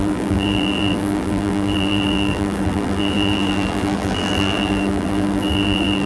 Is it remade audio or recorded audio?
remade